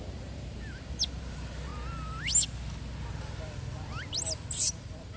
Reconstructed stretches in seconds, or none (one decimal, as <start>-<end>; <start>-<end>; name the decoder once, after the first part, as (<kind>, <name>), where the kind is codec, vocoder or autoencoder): 0.0-1.7 (vocoder, BigVGAN v2); 4.8-5.2

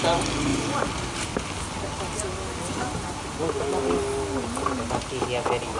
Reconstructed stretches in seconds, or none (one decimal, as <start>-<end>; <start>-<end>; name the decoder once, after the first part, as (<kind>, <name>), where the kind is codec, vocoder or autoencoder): none

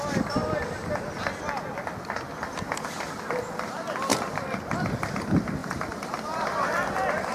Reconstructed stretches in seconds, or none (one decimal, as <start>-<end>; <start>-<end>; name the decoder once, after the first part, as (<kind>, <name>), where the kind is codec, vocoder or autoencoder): 4.1-4.9 (vocoder, BigVGAN v2); 5.6-6.5

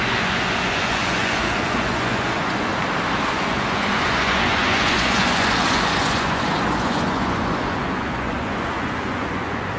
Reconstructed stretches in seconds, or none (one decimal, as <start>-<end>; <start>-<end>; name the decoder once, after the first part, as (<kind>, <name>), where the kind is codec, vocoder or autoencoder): 0.0-2.7 (vocoder, Vocos); 3.3-9.8

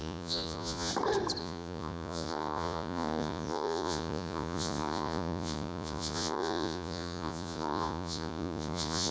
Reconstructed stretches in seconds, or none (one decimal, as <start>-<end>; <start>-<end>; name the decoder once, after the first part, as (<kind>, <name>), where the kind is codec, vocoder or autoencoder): 0.0-0.9 (vocoder, Vocos); 1.4-9.1

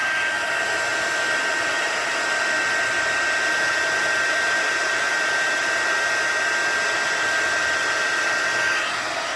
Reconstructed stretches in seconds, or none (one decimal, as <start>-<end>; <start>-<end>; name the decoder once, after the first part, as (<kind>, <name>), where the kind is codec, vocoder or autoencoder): 4.3-5.1 (vocoder, BigVGAN v2)

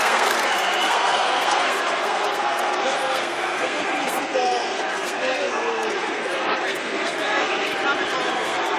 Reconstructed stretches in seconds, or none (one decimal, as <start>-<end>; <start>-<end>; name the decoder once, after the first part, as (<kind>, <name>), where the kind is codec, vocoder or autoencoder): 0.0-7.7 (codec, SNAC); 8.3-8.8